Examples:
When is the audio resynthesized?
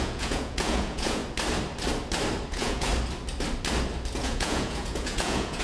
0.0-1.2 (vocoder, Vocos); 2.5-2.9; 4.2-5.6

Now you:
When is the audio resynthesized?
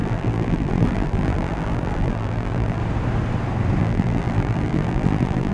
0.0-2.8 (vocoder, BigVGAN v2); 3.8-5.5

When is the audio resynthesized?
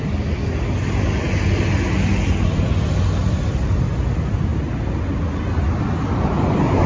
none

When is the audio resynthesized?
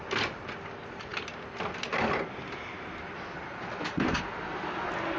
none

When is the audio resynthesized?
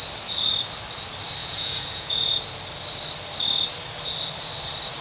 1.4-2.4 (vocoder, Vocos)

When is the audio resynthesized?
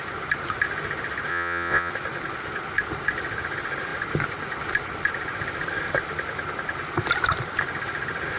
1.3-1.9 (vocoder, Vocos)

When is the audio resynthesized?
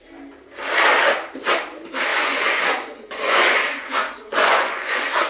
2.1-5.3 (vocoder, Vocos)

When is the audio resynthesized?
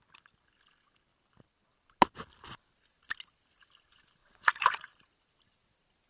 4.2-4.9 (vocoder, Vocos)